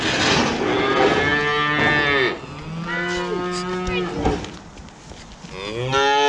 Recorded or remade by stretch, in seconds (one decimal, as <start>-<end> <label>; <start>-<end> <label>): 0.0-6.3 recorded